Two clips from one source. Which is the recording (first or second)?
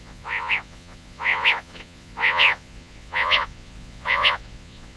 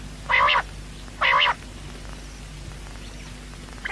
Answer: second